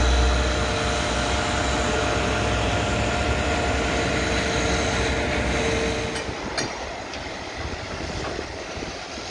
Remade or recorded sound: recorded